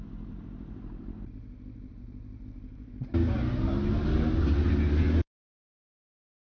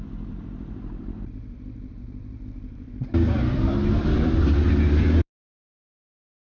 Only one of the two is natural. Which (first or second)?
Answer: first